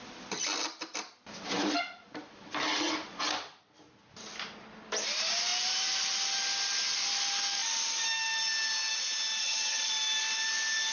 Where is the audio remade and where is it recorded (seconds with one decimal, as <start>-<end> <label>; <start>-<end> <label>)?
0.0-9.4 recorded; 9.4-9.9 remade; 9.9-10.9 recorded